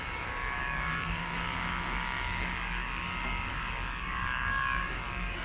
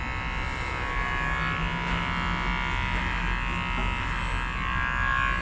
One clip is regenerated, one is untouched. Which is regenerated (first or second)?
first